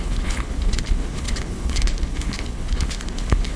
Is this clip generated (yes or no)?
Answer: yes